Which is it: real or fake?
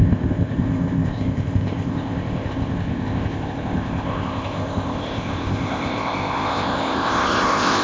fake